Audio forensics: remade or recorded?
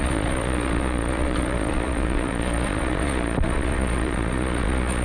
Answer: remade